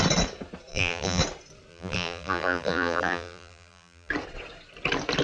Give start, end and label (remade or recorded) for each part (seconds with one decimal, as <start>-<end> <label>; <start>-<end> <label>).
0.0-0.7 recorded; 0.7-1.2 remade; 1.2-1.7 recorded; 1.7-4.1 remade; 4.1-5.2 recorded